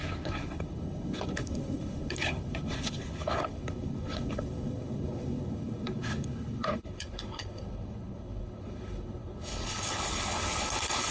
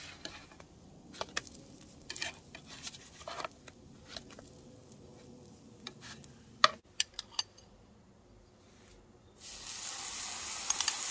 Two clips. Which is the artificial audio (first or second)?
first